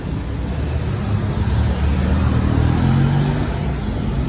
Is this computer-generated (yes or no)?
no